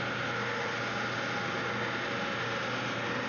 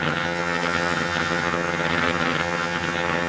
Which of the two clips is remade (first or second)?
second